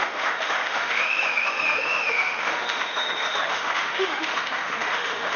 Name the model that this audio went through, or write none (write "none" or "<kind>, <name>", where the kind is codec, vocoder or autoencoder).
autoencoder, DAC-VAE